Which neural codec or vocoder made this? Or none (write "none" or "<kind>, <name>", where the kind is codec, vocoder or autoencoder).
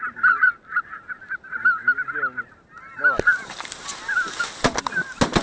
none